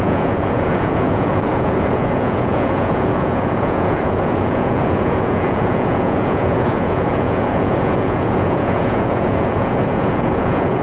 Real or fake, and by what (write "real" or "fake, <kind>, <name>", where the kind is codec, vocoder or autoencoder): fake, vocoder, Vocos